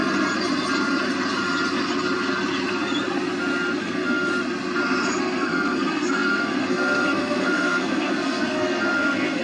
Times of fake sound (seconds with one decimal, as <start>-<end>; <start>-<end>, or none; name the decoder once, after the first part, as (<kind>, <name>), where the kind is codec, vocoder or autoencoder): 3.8-4.3 (codec, SNAC); 5.2-9.4